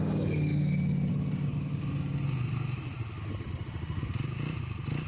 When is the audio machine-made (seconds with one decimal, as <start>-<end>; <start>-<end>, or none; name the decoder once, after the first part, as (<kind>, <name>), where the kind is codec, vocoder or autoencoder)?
none